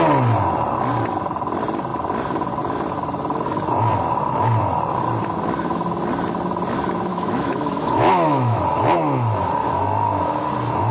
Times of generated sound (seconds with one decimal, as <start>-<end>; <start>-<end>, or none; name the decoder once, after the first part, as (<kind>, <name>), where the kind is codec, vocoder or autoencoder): 7.1-8.6 (autoencoder, DAC-VAE)